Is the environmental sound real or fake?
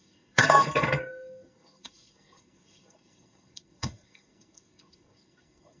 fake